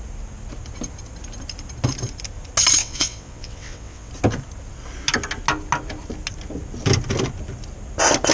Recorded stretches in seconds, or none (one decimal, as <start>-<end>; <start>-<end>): 0.0-2.8; 4.1-8.3